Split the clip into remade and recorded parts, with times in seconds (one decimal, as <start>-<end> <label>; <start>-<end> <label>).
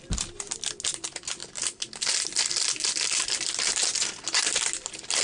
0.0-5.2 recorded